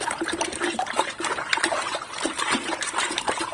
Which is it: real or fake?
fake